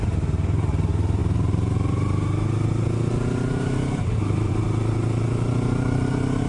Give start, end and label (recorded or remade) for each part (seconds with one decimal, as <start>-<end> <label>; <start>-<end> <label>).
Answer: 0.0-6.5 recorded